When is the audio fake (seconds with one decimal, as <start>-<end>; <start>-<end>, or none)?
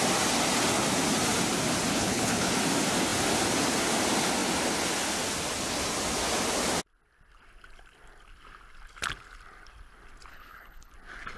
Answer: 1.9-2.5; 10.3-10.9